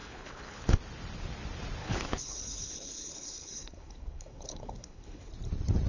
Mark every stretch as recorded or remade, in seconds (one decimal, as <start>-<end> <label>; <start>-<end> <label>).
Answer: 0.0-0.8 remade; 0.8-1.8 recorded; 1.8-5.3 remade; 5.3-5.9 recorded